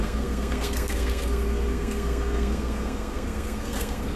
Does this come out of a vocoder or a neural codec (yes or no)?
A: yes